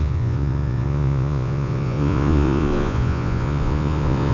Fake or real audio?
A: fake